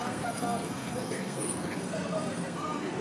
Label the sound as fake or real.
fake